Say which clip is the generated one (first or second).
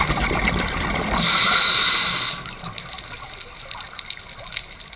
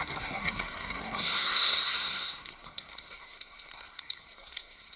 second